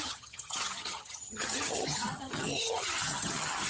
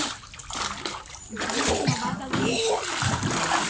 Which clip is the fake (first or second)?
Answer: first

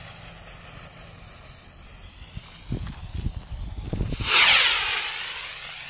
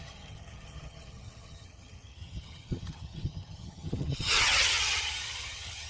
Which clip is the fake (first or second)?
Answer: second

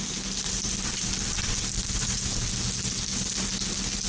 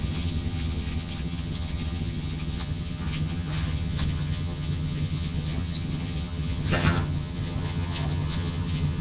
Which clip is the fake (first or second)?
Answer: second